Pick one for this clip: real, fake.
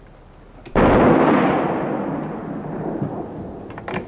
real